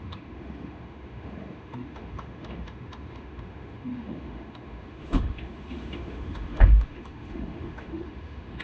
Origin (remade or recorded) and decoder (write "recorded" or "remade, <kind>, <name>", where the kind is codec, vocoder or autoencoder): remade, autoencoder, DAC-VAE